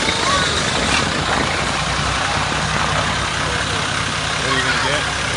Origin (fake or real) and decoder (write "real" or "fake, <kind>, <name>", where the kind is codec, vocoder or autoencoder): real